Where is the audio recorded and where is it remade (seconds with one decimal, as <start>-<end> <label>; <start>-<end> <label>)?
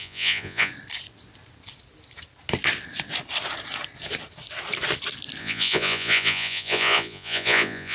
0.0-0.7 remade; 0.7-5.4 recorded; 5.4-7.9 remade